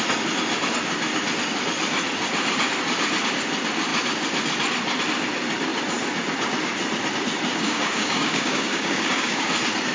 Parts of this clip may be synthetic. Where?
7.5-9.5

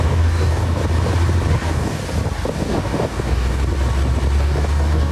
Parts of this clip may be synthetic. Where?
0.0-0.8; 1.5-2.0; 2.5-3.6; 4.4-5.1

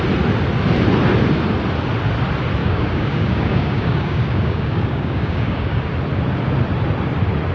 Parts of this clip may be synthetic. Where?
2.6-5.8

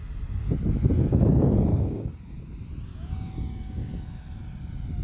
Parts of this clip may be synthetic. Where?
1.7-2.2; 2.9-3.9

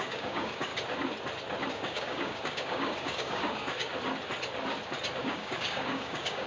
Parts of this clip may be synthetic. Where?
0.0-0.7; 1.7-3.9; 5.2-6.5

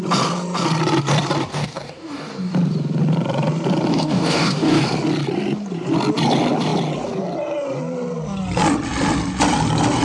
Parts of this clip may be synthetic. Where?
1.5-2.5; 3.9-4.8

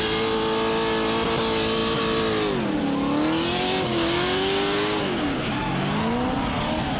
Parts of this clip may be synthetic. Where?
3.9-5.5

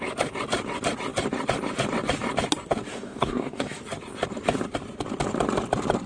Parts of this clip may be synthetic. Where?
2.9-3.8